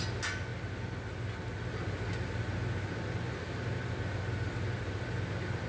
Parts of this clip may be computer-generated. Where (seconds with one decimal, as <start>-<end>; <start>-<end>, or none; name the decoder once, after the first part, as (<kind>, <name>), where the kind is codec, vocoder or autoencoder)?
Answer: none